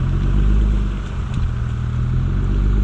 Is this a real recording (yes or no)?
yes